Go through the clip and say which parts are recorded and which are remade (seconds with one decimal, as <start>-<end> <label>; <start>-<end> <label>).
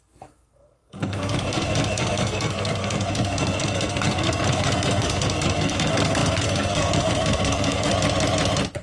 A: 0.0-7.9 remade; 7.9-8.8 recorded